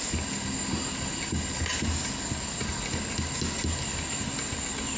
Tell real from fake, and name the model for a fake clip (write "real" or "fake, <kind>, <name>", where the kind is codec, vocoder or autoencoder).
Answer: real